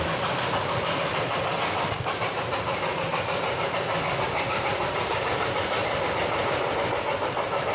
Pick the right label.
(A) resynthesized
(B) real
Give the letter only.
A